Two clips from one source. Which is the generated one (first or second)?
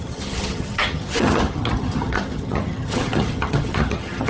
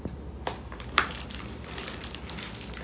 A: first